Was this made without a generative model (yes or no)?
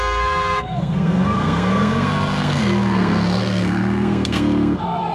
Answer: no